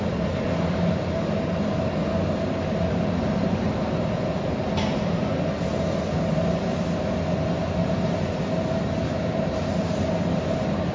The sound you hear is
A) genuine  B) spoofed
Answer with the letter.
A